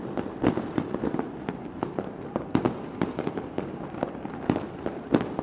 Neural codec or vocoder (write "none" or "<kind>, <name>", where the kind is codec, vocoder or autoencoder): none